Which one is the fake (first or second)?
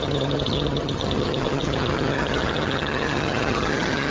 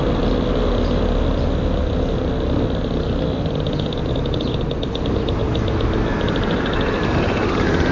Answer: first